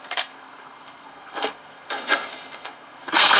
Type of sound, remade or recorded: remade